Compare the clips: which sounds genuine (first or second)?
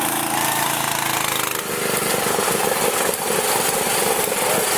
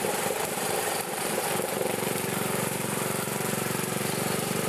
first